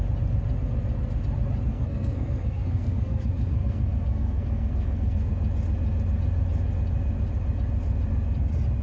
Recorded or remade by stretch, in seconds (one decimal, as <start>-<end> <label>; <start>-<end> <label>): 0.0-1.7 recorded; 1.7-5.3 remade; 5.3-8.8 recorded